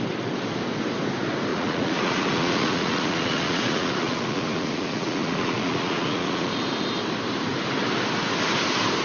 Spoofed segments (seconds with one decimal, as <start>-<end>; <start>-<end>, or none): 1.5-6.5